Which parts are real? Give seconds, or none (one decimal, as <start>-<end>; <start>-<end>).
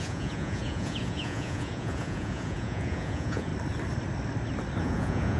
3.5-4.8